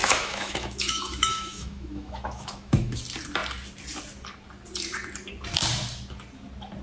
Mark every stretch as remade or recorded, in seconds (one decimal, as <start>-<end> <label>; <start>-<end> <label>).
0.0-3.0 remade; 3.0-6.8 recorded